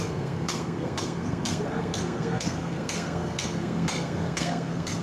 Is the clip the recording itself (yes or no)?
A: no